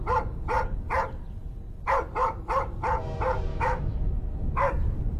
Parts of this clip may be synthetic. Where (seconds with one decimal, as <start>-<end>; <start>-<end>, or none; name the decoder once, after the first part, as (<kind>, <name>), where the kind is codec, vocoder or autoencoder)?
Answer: 3.5-4.1 (autoencoder, DAC-VAE)